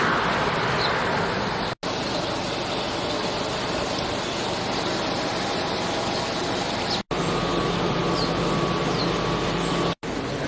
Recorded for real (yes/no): yes